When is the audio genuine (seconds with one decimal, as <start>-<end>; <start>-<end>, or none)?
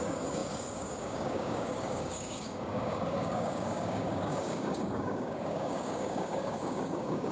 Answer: none